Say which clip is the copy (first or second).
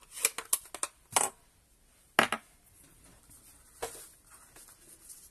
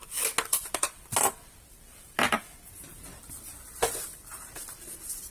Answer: second